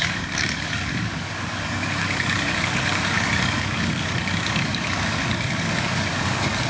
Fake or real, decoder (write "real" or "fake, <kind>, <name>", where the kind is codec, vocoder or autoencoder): fake, codec, DAC